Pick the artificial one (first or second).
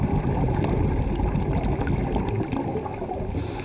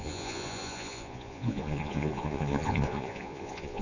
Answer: second